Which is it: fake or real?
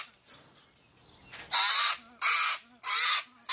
real